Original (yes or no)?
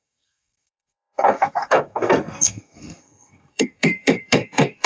no